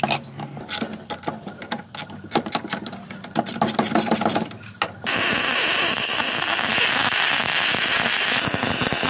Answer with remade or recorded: recorded